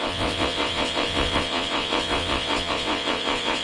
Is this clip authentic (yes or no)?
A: no